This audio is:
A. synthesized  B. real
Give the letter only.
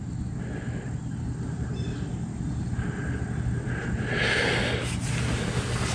B